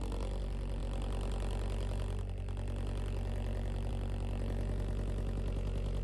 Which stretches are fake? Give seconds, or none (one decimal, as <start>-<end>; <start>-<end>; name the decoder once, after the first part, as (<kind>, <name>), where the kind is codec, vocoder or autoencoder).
none